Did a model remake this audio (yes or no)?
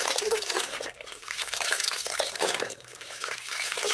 yes